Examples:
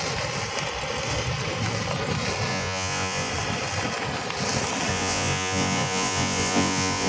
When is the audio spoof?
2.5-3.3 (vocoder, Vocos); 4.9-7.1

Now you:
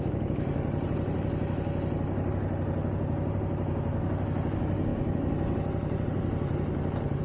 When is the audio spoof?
none

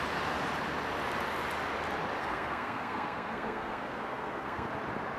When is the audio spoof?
2.2-4.7 (codec, SNAC)

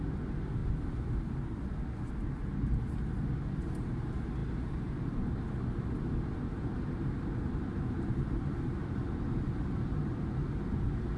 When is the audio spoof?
none

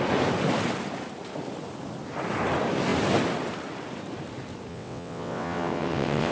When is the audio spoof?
4.7-6.3 (vocoder, WaveNeXt)